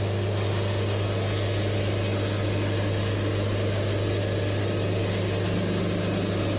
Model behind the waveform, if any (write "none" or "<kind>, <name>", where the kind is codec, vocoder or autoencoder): none